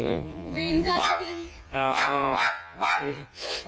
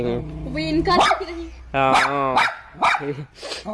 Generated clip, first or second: first